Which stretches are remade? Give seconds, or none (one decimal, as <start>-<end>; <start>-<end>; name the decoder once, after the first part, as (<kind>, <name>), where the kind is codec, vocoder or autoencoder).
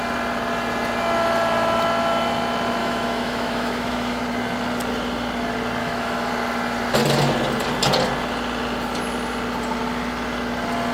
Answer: 2.8-4.2 (autoencoder, DAC-VAE); 5.8-6.3